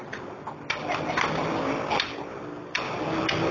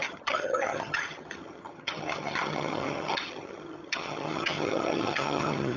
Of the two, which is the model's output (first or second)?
second